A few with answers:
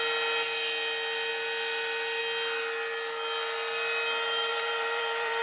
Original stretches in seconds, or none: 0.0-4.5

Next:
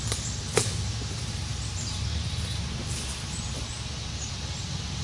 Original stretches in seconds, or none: 0.0-1.5; 2.7-5.0

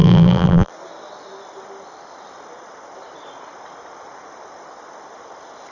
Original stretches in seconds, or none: 0.7-5.7

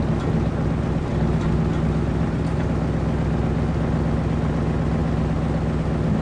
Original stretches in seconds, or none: 0.0-2.1; 2.7-6.2

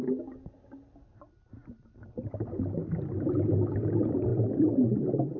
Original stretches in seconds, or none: 0.0-1.6; 2.6-4.3

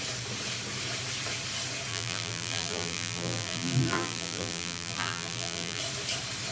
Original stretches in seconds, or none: 0.0-1.9; 5.8-6.5